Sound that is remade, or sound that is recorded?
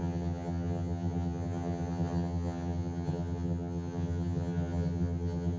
remade